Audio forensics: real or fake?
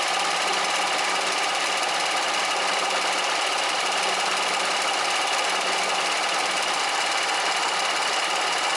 real